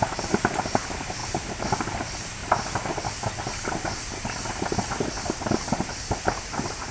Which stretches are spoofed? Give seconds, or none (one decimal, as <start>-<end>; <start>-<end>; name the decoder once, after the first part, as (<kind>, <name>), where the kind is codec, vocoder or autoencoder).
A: 0.0-1.2 (vocoder, BigVGAN v2); 1.8-2.4; 4.5-6.9